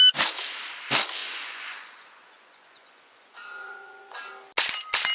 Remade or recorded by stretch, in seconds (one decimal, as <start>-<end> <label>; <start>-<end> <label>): 0.0-1.2 recorded; 1.2-4.3 remade; 4.3-5.1 recorded